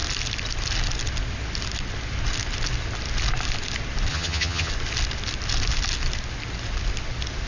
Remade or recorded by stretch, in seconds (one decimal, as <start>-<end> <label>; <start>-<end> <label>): 0.0-4.1 recorded; 4.1-4.7 remade; 4.7-7.5 recorded